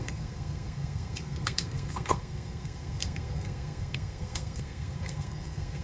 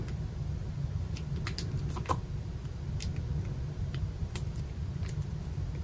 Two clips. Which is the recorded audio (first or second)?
second